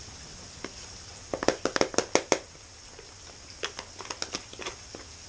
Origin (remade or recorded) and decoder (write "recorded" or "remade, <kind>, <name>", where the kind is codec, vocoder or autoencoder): recorded